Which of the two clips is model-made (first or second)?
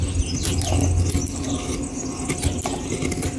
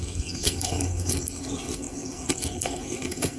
second